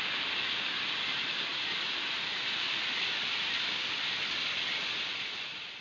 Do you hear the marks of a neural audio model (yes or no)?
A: no